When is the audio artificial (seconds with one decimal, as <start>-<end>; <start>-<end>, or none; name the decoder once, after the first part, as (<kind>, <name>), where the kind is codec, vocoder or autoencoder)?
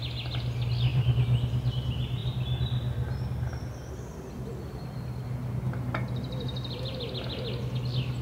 0.9-1.7 (vocoder, BigVGAN v2); 5.4-8.2